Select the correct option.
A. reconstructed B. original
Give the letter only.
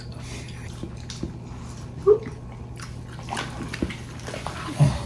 B